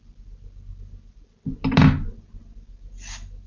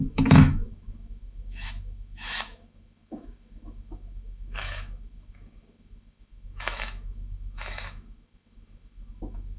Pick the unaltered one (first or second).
first